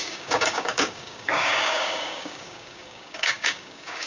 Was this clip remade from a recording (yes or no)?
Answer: yes